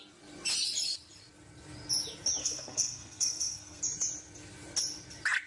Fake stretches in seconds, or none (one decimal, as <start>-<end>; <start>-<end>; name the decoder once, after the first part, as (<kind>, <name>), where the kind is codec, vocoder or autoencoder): 2.4-3.8 (codec, SNAC)